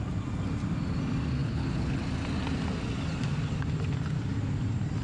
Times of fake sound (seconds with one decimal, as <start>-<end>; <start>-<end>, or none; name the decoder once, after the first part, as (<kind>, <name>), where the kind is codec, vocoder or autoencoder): 1.4-2.0 (codec, HILCodec)

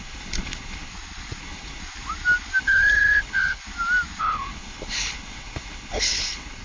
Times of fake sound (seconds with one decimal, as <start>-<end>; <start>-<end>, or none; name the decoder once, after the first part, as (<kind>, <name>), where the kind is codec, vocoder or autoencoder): 0.0-0.9 (codec, HILCodec); 1.4-1.8; 2.6-3.6; 4.2-6.6

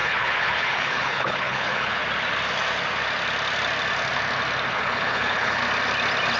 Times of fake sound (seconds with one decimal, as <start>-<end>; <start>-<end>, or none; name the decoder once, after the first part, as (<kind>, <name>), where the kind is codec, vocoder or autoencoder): 0.0-2.0 (codec, HILCodec); 4.7-5.6

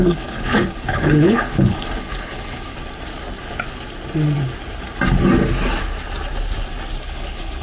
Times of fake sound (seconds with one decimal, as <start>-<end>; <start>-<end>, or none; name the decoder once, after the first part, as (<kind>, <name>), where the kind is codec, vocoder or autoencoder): 0.0-2.7 (codec, HILCodec); 7.0-7.6

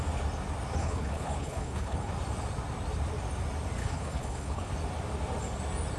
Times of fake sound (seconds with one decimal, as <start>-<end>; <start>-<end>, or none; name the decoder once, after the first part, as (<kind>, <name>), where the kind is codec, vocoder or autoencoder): 0.8-2.1 (codec, HILCodec); 3.8-4.7

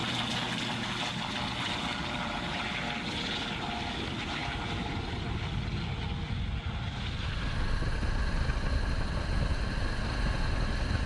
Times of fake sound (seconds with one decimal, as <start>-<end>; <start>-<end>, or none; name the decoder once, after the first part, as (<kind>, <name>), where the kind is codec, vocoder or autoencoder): none

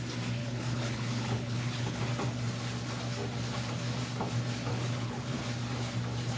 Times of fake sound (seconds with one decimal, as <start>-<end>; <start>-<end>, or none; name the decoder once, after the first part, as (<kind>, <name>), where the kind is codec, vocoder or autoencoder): 0.4-2.0 (codec, HILCodec); 4.7-5.4